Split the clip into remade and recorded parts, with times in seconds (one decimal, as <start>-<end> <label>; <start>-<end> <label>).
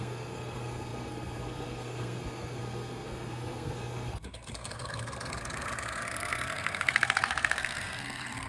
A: 0.0-8.5 remade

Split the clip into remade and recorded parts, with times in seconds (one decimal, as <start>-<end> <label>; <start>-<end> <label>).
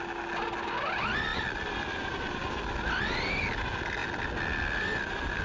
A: 0.0-5.4 recorded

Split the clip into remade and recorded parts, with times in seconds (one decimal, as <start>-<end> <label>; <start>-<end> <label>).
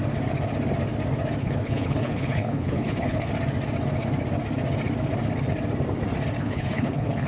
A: 0.0-1.4 recorded; 1.4-3.3 remade; 3.3-6.4 recorded; 6.4-7.3 remade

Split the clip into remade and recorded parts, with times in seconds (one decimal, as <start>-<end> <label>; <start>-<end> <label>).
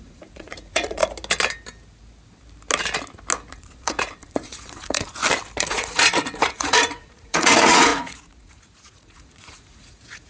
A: 0.0-1.0 remade; 1.0-3.5 recorded; 3.5-5.2 remade; 5.2-5.7 recorded; 5.7-10.3 remade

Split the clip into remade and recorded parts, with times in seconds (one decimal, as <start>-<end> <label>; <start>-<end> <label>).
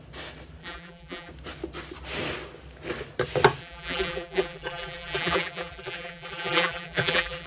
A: 0.0-0.6 recorded; 0.6-1.3 remade; 1.3-3.6 recorded; 3.6-7.5 remade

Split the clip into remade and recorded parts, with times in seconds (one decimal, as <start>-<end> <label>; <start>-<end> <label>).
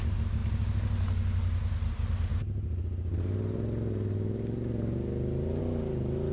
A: 0.0-6.3 recorded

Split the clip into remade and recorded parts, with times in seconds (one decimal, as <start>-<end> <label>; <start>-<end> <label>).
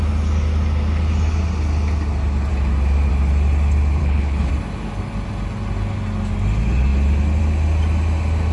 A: 0.0-4.0 recorded; 4.0-4.5 remade; 4.5-8.5 recorded